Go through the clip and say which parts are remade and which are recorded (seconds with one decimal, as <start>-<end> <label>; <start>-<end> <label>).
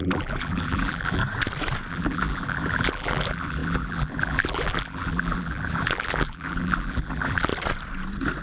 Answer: 0.0-1.2 remade; 1.2-1.9 recorded; 1.9-7.5 remade; 7.5-8.4 recorded